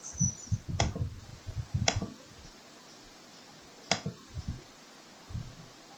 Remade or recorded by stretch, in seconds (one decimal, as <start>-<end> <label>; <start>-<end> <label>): 0.0-6.0 recorded